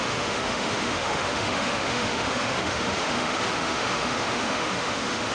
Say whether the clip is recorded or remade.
remade